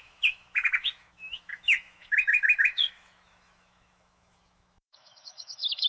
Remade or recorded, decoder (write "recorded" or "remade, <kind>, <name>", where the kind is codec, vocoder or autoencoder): remade, autoencoder, DAC-VAE